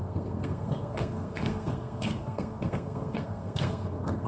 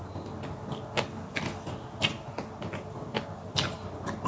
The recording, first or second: second